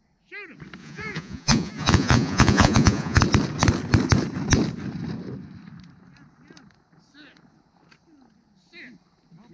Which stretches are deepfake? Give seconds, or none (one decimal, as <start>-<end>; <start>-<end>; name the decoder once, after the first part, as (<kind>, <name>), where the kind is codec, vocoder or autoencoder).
0.8-3.2 (vocoder, Vocos)